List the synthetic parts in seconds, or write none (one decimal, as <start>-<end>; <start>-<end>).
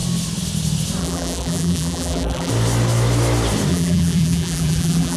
1.0-2.5; 3.7-5.2